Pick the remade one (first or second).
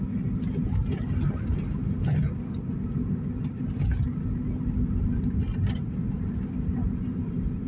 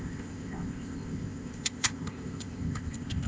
second